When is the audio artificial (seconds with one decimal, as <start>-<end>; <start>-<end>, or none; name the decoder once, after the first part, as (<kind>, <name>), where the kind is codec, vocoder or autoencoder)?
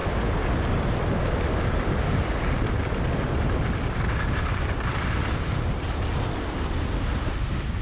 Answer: none